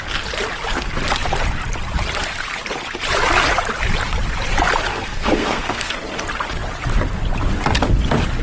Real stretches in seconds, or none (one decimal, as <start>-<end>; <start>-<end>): 0.0-4.9; 5.9-8.4